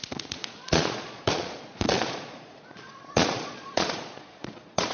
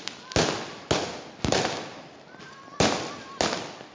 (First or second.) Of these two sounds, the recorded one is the second